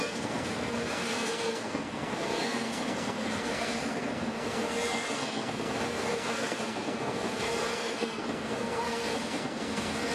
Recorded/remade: remade